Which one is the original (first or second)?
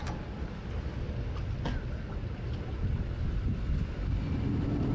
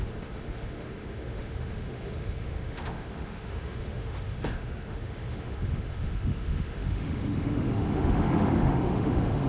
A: first